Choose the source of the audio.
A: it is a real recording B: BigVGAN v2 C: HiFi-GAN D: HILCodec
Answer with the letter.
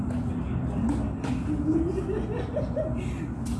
A